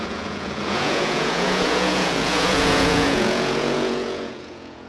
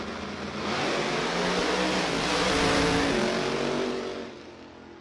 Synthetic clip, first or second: first